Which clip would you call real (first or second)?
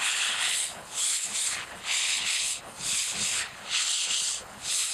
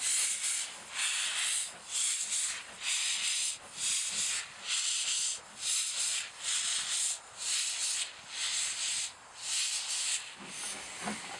second